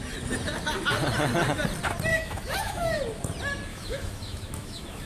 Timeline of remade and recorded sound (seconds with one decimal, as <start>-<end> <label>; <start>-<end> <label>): 0.0-2.1 recorded; 2.1-3.0 remade; 3.0-3.7 recorded; 3.7-5.1 remade